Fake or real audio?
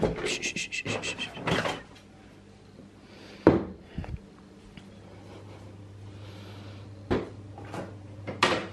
real